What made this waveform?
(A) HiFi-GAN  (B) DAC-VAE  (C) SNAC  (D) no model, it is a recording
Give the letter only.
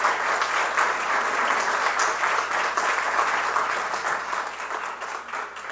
D